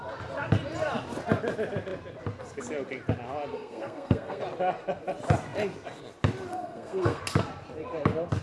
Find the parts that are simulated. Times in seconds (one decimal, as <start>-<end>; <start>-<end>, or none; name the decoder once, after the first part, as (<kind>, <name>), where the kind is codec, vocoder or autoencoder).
3.5-4.4 (codec, SNAC); 6.5-7.2